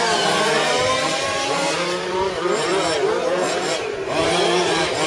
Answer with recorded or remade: remade